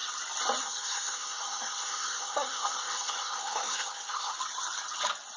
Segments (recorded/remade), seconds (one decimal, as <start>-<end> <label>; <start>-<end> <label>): 0.0-0.6 recorded; 0.6-4.3 remade; 4.3-5.4 recorded